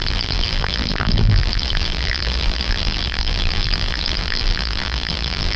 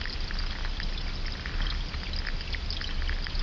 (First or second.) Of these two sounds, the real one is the second